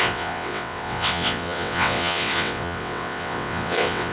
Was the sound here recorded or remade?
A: remade